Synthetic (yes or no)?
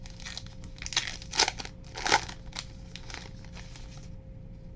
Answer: no